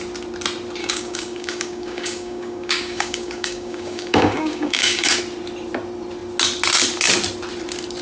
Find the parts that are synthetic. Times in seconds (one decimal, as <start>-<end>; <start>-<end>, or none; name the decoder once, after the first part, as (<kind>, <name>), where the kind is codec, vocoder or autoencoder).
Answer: 0.8-5.2 (codec, DAC)